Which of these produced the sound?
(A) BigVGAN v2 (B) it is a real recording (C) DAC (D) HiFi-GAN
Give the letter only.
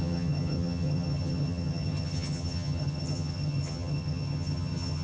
D